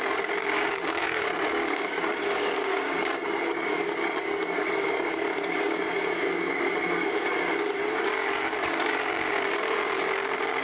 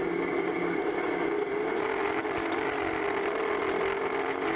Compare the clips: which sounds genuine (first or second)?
second